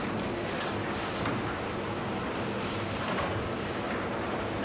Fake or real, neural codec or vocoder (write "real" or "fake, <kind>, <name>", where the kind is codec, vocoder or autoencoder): real